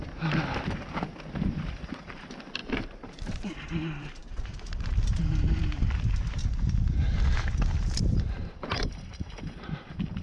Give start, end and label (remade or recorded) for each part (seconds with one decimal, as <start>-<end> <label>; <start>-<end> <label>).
0.0-1.3 recorded; 1.3-6.4 remade; 6.4-8.0 recorded; 8.0-10.2 remade

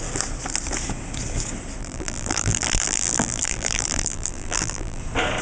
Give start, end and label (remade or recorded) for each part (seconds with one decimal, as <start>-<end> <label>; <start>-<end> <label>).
0.0-1.8 recorded; 1.8-5.0 remade; 5.0-5.4 recorded

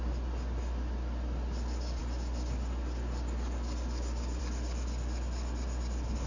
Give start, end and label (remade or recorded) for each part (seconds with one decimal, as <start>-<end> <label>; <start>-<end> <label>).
0.0-6.3 recorded